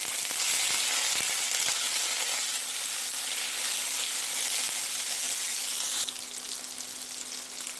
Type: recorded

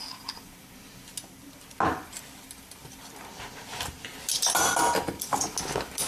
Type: recorded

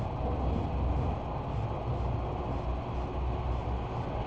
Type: recorded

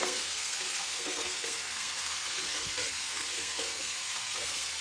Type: remade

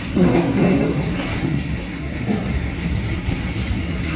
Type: remade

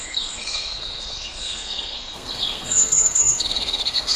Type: remade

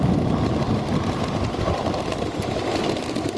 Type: recorded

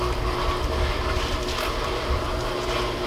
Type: recorded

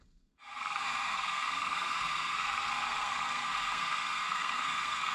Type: remade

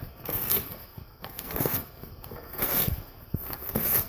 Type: remade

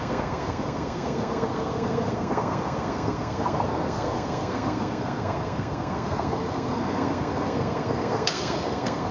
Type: remade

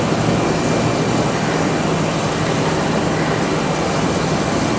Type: recorded